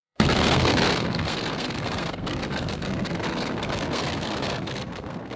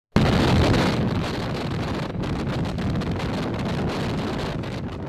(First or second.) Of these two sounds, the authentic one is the second